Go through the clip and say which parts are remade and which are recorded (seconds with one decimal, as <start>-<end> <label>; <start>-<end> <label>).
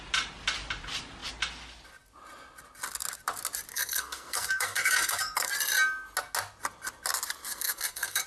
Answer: 0.0-3.7 recorded; 3.7-5.5 remade; 5.5-7.4 recorded; 7.4-8.3 remade